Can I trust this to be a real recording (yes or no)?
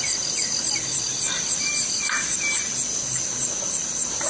yes